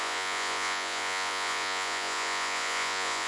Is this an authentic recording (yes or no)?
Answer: no